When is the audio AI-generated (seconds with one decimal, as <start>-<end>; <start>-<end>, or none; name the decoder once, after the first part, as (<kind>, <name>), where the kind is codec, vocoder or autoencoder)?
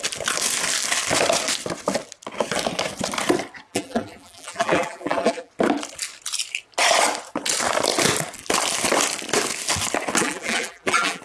3.7-5.5 (vocoder, BigVGAN v2); 10.2-11.2